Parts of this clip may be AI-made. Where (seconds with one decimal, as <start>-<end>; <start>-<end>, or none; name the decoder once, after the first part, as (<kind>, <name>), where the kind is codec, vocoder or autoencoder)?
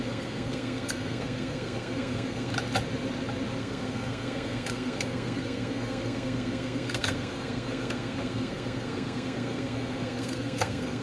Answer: 0.0-2.5 (codec, SNAC); 3.6-11.0